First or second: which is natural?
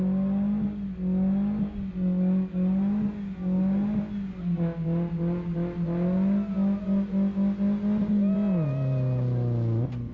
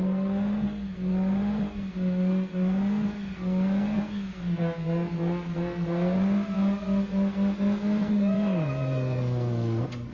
first